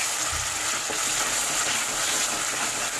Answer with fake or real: real